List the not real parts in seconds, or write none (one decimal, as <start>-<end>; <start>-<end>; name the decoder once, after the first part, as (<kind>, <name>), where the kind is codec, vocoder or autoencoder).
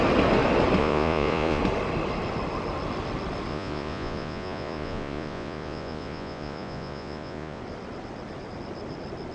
0.8-1.6 (vocoder, Vocos); 3.5-7.6